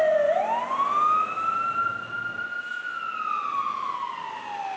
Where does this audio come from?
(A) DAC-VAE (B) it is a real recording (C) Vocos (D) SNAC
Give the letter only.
B